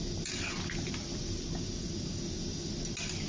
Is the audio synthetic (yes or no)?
no